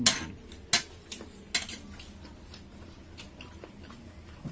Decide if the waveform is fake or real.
real